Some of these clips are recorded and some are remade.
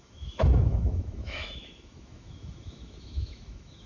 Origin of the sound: remade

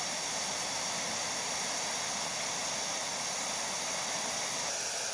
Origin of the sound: recorded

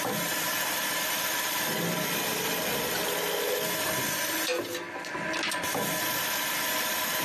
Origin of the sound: recorded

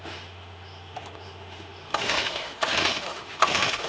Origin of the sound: remade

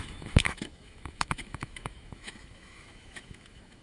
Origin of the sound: remade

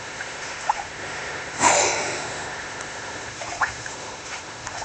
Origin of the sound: remade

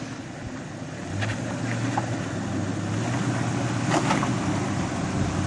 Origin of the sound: recorded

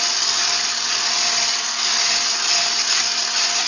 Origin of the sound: recorded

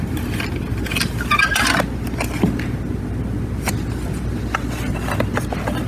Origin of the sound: recorded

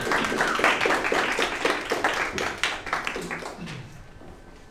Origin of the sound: recorded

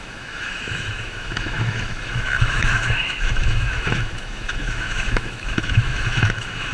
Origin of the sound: remade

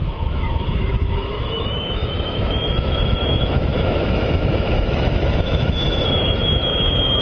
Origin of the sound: remade